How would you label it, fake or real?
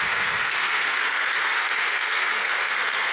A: fake